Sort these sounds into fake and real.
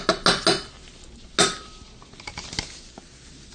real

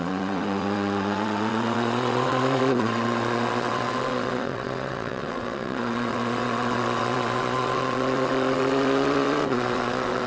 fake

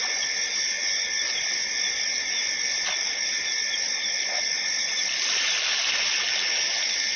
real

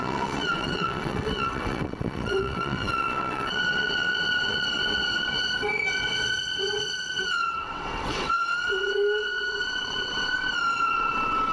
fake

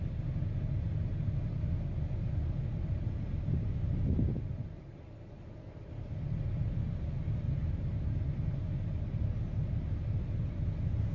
real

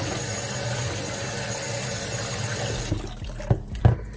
real